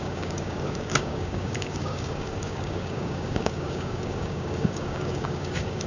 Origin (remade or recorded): remade